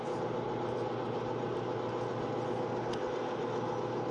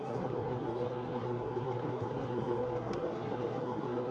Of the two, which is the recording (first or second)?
first